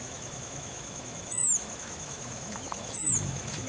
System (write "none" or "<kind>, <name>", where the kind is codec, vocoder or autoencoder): autoencoder, DAC-VAE